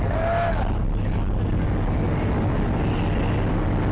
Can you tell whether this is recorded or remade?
recorded